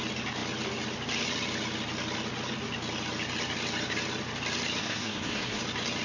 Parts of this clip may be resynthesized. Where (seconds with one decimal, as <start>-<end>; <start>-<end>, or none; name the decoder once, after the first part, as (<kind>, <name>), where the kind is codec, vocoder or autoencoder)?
4.8-5.6 (codec, SNAC)